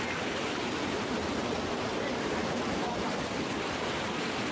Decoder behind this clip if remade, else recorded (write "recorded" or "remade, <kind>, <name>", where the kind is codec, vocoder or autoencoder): recorded